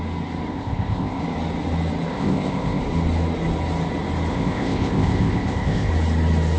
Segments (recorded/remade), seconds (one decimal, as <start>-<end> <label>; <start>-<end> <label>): 0.0-0.5 recorded; 0.5-1.2 remade; 1.2-2.1 recorded; 2.1-2.8 remade; 2.8-4.3 recorded; 4.3-5.9 remade; 5.9-6.6 recorded